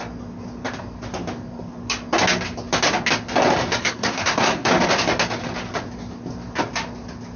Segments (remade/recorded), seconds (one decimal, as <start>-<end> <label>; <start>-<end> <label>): 0.0-3.8 recorded; 3.8-4.7 remade; 4.7-7.4 recorded

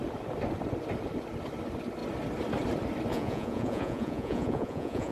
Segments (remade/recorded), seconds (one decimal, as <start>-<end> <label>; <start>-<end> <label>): 0.0-3.1 recorded; 3.1-5.1 remade

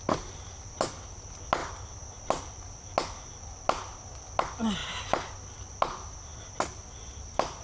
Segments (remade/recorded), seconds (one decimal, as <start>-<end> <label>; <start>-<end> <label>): 0.0-7.6 recorded

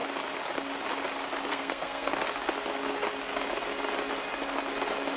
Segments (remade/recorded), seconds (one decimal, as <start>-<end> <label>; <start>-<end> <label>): 0.0-1.5 recorded; 1.5-2.1 remade; 2.1-5.2 recorded

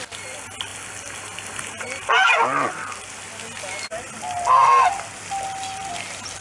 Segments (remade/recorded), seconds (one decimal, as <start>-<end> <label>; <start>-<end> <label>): 0.0-6.4 recorded

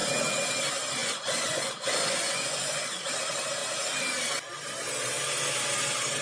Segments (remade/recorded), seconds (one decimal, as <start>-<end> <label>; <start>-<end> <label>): 0.0-1.0 recorded; 1.0-3.0 remade; 3.0-6.2 recorded